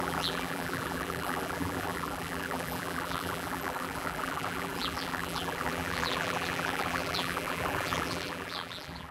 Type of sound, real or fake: fake